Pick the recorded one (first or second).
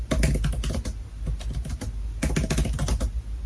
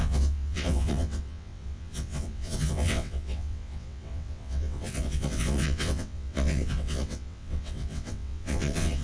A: first